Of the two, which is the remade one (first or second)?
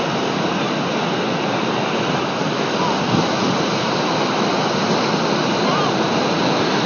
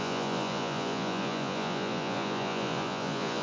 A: second